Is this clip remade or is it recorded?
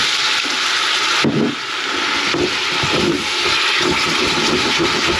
recorded